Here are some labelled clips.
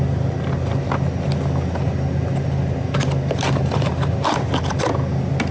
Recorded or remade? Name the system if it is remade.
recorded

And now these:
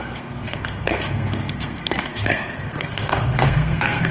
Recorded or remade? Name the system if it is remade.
remade, codec, SNAC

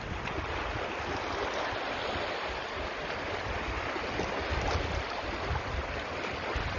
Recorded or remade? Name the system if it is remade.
recorded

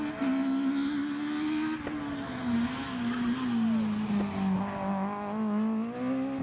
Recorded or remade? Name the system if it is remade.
recorded